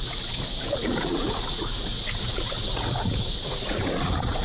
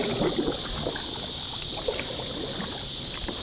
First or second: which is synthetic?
first